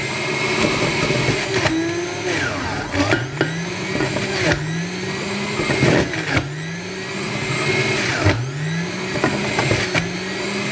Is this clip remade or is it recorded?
recorded